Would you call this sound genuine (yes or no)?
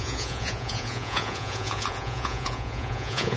no